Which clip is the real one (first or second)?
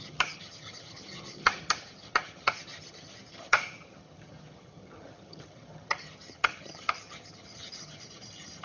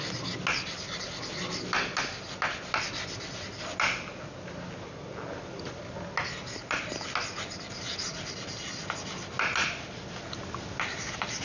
second